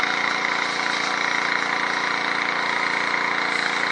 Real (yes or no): yes